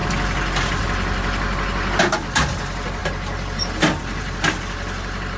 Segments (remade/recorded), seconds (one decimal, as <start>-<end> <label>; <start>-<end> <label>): 0.0-5.4 recorded